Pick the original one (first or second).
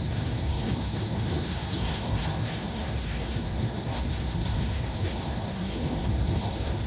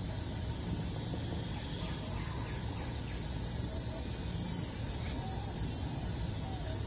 second